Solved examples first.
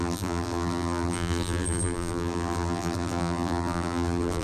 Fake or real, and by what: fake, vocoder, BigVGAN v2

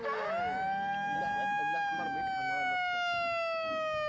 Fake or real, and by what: real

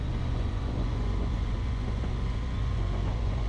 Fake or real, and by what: fake, vocoder, Vocos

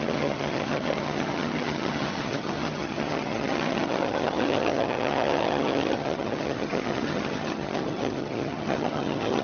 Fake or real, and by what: fake, vocoder, HiFi-GAN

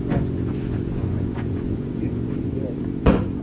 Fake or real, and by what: fake, vocoder, Vocos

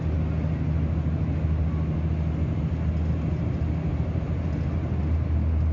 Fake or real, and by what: real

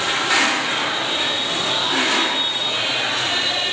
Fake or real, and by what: real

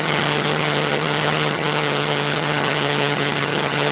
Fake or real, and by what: fake, vocoder, HiFi-GAN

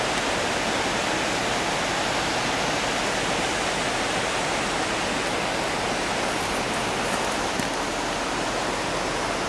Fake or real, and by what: real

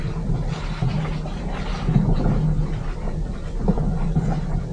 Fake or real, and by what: real